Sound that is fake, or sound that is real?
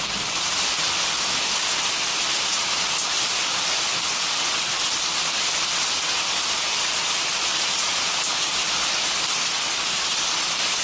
real